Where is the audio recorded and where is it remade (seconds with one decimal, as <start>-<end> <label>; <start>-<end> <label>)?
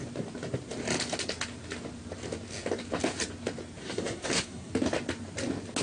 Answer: 0.0-3.8 recorded; 3.8-4.7 remade; 4.7-5.8 recorded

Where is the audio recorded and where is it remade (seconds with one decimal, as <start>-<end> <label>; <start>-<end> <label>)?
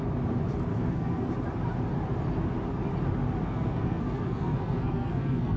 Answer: 0.0-0.7 recorded; 0.7-1.3 remade; 1.3-3.4 recorded; 3.4-5.6 remade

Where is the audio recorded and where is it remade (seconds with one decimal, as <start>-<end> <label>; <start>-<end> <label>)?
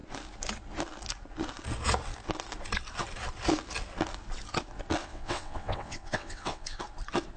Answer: 0.0-5.0 recorded; 5.0-6.8 remade; 6.8-7.4 recorded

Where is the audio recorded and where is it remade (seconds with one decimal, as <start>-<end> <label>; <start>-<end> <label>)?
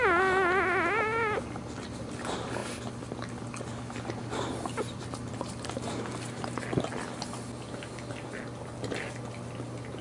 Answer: 0.0-10.0 recorded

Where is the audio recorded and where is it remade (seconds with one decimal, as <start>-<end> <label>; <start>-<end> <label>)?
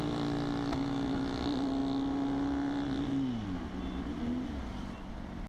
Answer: 0.0-5.5 recorded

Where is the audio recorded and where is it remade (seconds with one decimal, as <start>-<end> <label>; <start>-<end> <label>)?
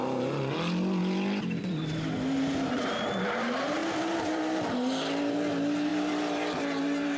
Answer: 0.0-2.7 recorded; 2.7-7.2 remade